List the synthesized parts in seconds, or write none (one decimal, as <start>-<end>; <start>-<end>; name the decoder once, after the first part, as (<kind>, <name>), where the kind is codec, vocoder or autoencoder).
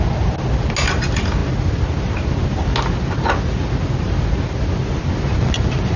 none